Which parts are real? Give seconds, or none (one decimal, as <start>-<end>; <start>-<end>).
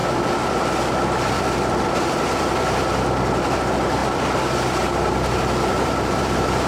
0.0-6.7